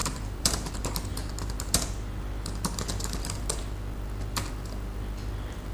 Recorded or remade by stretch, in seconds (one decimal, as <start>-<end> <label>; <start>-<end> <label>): 0.0-0.7 remade; 0.7-5.7 recorded